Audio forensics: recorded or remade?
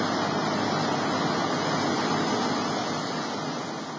recorded